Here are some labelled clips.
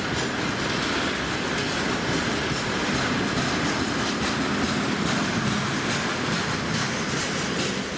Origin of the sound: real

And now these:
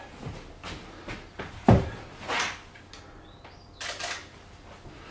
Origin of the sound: real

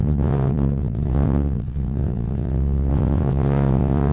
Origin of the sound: fake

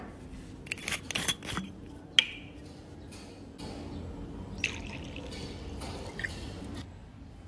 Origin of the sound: real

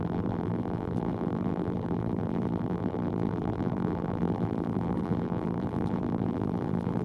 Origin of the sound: fake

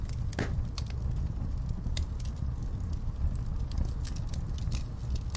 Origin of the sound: real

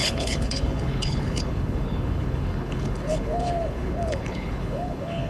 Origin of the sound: fake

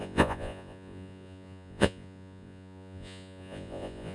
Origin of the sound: fake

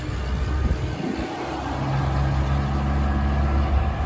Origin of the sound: real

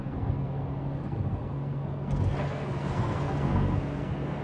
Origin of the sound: fake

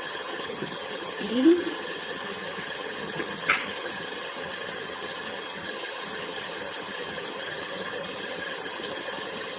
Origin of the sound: fake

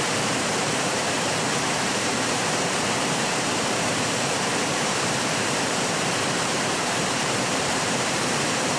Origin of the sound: fake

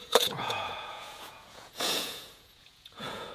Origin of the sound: fake